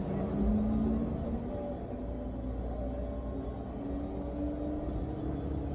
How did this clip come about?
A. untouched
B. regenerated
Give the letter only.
A